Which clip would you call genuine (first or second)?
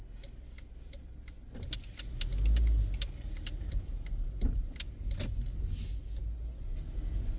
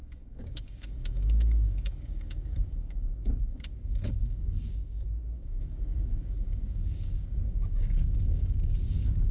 first